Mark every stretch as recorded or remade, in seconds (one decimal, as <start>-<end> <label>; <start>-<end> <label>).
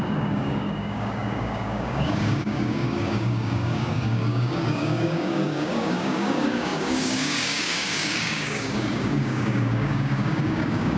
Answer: 0.0-11.0 remade